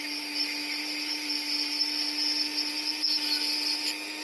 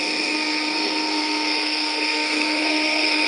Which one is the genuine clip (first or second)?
first